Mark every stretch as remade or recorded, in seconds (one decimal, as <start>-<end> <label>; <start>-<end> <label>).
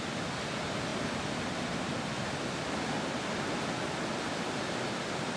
0.0-5.4 recorded